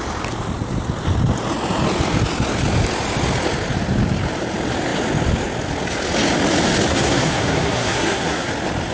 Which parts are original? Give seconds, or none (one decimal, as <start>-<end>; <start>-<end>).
0.0-6.9; 8.5-8.9